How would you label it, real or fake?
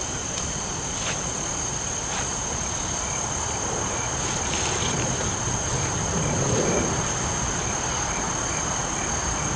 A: real